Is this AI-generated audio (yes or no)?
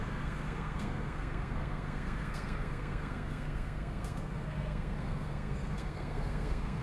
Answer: yes